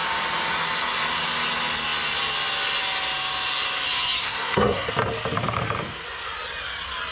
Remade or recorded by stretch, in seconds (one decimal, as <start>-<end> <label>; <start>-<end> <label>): 0.0-4.2 recorded; 4.2-4.9 remade; 4.9-7.1 recorded